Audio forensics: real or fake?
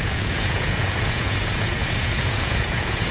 fake